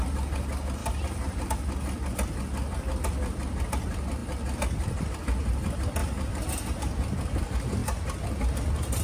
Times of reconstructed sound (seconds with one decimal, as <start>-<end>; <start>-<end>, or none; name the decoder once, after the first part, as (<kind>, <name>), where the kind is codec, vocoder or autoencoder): 0.8-1.5 (vocoder, BigVGAN v2); 6.0-6.5